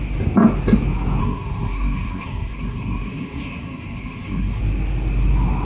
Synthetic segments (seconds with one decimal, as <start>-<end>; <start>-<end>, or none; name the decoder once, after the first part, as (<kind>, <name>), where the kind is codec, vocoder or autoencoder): 1.2-4.6 (codec, SNAC)